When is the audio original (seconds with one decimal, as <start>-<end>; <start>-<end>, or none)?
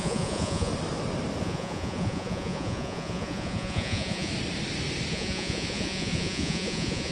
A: 0.7-1.4; 4.3-5.1